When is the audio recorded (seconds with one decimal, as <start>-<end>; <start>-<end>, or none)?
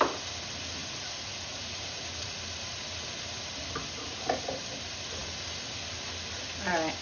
0.0-0.8; 2.4-7.0